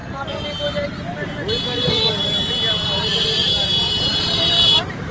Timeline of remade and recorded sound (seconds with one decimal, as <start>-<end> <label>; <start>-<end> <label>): 0.0-3.4 recorded; 3.4-5.1 remade